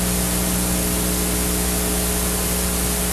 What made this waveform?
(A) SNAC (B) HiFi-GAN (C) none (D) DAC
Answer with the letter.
C